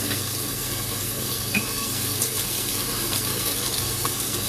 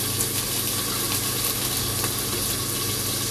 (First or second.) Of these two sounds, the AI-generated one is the first